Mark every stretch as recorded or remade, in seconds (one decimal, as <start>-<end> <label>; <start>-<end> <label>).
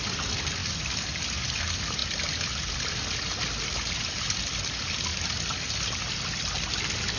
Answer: 0.0-7.2 recorded